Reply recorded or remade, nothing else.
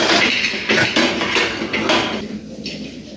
recorded